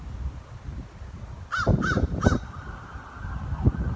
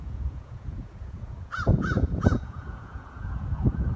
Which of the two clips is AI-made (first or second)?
second